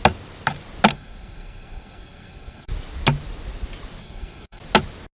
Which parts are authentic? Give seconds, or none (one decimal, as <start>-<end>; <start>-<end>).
0.0-0.9; 2.7-4.0; 4.6-5.1